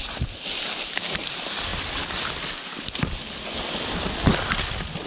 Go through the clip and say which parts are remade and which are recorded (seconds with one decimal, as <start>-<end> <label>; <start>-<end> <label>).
0.0-5.1 recorded